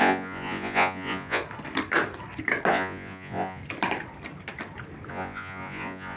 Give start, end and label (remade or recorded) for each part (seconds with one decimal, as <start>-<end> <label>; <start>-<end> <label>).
0.0-1.4 remade; 1.4-2.7 recorded; 2.7-3.6 remade; 3.6-5.1 recorded; 5.1-6.2 remade